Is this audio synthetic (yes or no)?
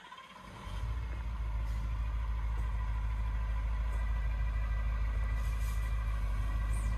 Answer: no